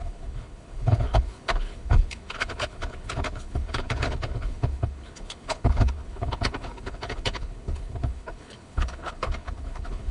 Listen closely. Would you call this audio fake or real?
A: fake